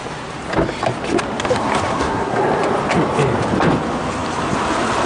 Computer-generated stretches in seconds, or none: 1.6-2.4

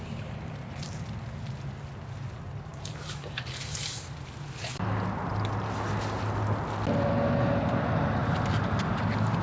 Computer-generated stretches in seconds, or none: none

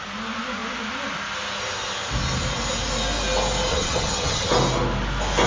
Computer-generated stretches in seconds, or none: 3.7-4.5

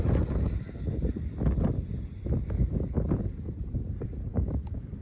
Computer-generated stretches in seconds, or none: 4.3-5.0

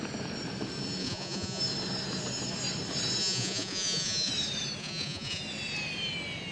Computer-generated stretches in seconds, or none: 1.0-1.6; 3.2-4.3; 4.8-5.4

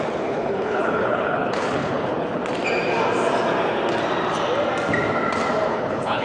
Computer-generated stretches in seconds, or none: 0.0-2.4; 5.7-6.2

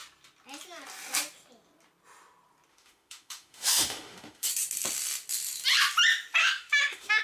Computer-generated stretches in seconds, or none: 2.7-4.5; 6.4-7.2